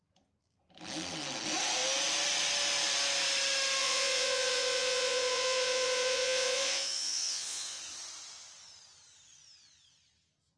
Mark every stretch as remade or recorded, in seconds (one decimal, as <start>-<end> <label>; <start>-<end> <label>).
0.0-3.8 recorded; 3.8-7.8 remade; 7.8-10.6 recorded